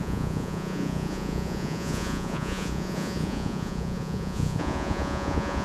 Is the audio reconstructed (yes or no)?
yes